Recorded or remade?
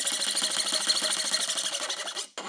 recorded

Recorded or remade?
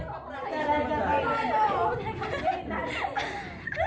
recorded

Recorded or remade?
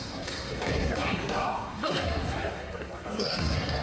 remade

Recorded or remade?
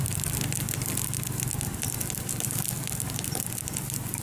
recorded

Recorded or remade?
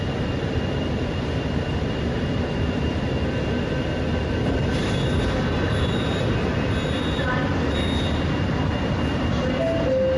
recorded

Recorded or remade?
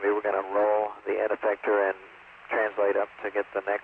recorded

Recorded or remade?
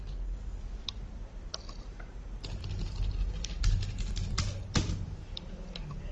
recorded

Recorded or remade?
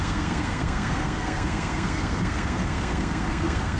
remade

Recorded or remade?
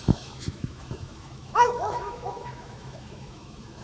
remade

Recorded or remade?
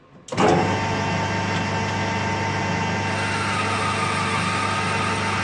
recorded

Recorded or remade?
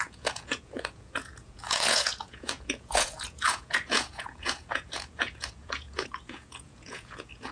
remade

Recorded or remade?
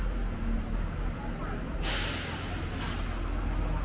recorded